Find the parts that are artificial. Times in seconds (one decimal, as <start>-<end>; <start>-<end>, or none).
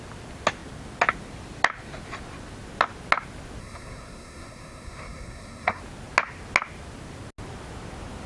3.6-5.8